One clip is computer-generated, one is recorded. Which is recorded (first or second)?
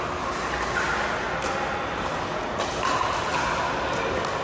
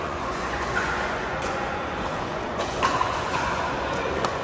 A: first